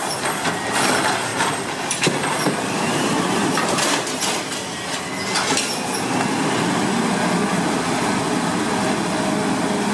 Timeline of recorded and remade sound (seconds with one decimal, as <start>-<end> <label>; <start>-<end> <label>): 0.0-1.3 recorded; 1.3-4.2 remade; 4.2-9.9 recorded